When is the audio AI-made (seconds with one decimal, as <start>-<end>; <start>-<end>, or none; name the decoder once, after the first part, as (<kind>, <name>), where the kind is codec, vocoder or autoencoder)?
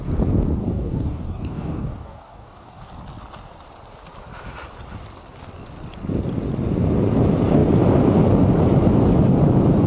0.6-2.8 (codec, DAC)